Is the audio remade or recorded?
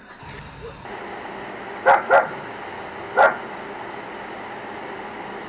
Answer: recorded